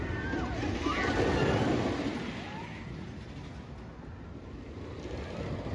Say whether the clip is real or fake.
real